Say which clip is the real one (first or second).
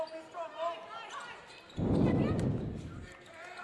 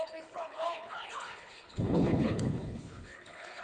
first